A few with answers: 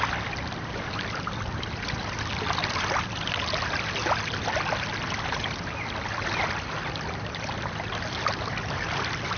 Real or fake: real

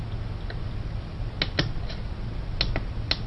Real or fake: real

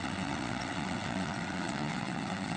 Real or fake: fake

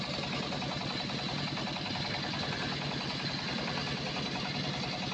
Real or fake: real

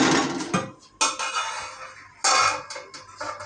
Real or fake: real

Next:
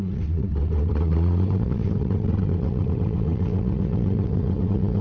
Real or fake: fake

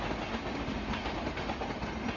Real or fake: real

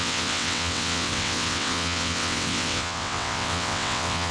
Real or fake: fake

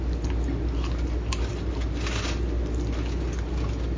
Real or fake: real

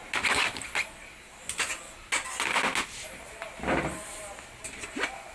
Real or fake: real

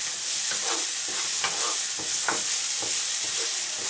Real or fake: real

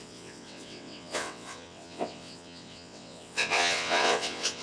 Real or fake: fake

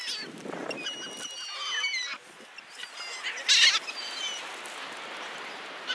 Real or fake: real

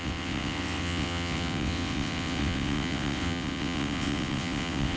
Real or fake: fake